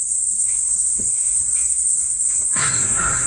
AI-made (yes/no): yes